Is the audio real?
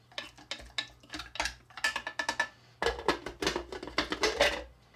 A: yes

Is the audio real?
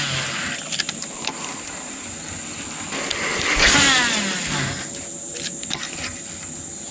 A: yes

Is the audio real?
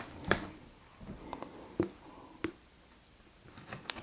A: yes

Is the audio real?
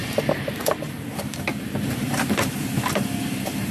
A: no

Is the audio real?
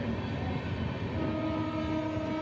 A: yes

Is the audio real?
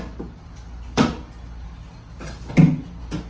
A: yes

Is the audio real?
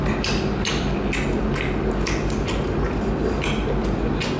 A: yes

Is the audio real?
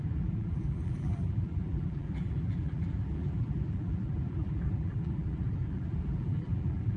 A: no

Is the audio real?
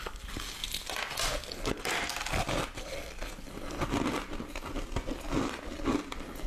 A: yes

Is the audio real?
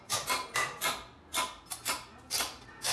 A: yes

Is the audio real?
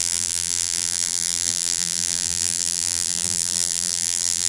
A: no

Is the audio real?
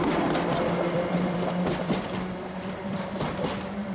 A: no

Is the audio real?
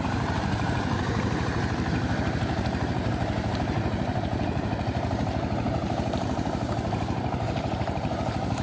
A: no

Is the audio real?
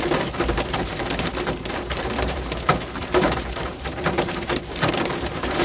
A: no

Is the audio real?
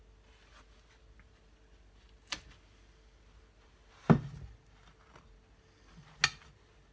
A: yes